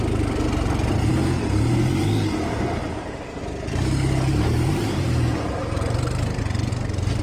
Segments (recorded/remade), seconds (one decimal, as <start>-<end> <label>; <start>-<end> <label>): 0.0-2.8 recorded; 2.8-6.4 remade; 6.4-7.2 recorded